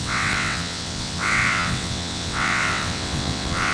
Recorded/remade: remade